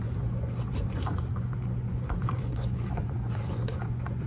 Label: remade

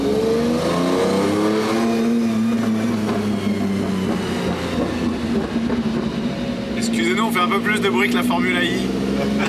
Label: recorded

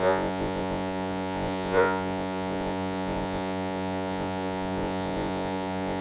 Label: remade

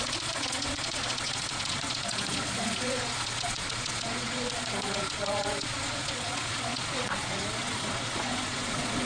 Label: remade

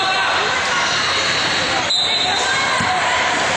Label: recorded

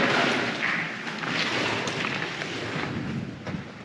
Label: recorded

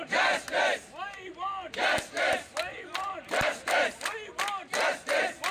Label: recorded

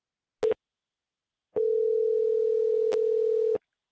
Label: recorded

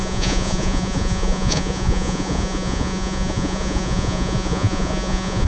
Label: remade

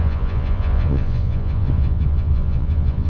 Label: remade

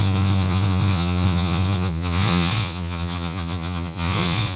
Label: remade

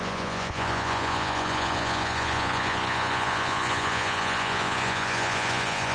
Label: remade